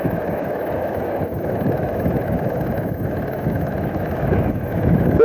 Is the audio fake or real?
fake